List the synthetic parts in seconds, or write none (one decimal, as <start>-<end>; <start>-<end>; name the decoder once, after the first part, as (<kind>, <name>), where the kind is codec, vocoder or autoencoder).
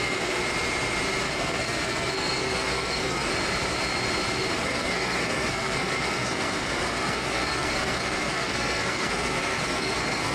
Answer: 0.0-0.4 (codec, SNAC); 1.2-3.3; 4.3-10.3